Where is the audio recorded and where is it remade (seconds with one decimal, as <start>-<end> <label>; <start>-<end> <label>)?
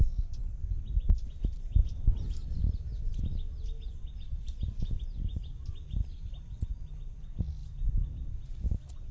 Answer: 0.0-9.1 recorded